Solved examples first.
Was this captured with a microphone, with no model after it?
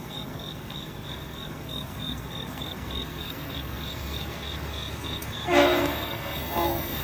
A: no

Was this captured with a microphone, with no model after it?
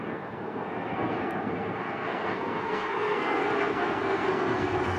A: no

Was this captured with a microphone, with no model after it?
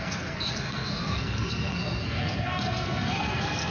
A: no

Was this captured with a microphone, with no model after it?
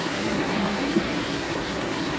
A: no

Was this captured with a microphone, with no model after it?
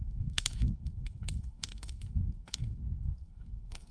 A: no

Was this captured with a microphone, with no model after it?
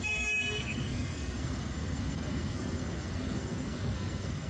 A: no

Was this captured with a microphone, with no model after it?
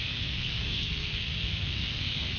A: no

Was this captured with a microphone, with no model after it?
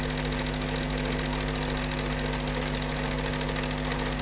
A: yes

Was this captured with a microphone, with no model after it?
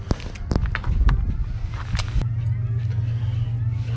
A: yes